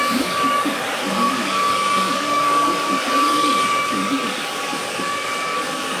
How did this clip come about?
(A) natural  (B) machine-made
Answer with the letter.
B